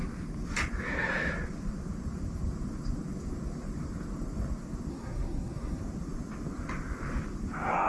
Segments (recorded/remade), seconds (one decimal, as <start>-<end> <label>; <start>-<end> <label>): 0.0-4.9 recorded; 4.9-5.8 remade; 5.8-7.9 recorded